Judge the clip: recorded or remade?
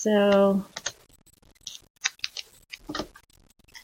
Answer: recorded